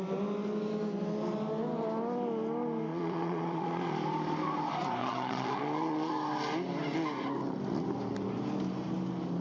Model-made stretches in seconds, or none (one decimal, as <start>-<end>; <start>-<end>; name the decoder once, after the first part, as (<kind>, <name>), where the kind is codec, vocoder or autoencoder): 2.9-3.9 (vocoder, Vocos); 5.0-6.1